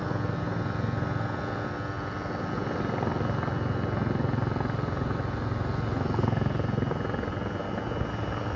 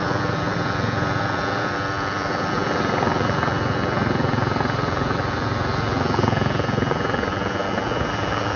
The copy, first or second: second